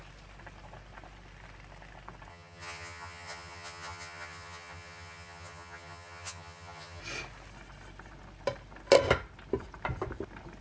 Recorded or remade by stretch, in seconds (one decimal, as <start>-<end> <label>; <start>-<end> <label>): 0.0-2.3 recorded; 2.3-7.0 remade; 7.0-10.6 recorded